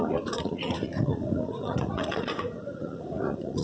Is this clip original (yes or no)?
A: no